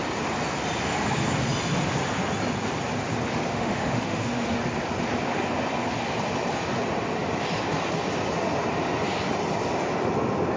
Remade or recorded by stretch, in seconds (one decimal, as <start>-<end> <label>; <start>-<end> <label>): 0.0-3.5 recorded; 3.5-4.6 remade; 4.6-10.6 recorded